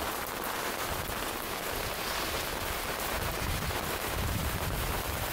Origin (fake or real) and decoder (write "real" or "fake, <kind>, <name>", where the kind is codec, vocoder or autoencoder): fake, vocoder, BigVGAN v2